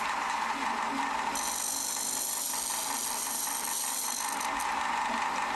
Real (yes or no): yes